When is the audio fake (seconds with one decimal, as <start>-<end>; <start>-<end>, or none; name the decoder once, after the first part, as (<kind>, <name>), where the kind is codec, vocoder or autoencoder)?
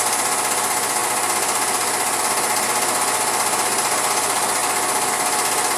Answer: none